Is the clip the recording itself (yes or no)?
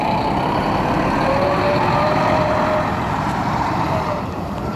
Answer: no